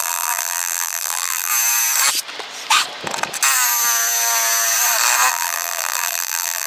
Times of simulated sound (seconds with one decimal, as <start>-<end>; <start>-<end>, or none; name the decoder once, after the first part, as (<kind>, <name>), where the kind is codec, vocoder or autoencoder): 0.0-1.5 (vocoder, BigVGAN v2); 5.3-6.7